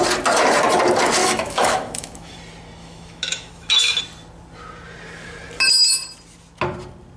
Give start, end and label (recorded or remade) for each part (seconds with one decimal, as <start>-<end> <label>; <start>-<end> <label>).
0.0-1.2 recorded; 1.2-2.3 remade; 2.3-2.8 recorded; 2.8-4.0 remade; 4.0-7.2 recorded